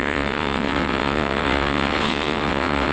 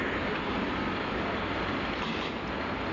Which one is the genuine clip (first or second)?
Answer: second